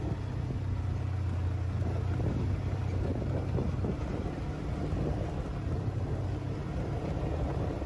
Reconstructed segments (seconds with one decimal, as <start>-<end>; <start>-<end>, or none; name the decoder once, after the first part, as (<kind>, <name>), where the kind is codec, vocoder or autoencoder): none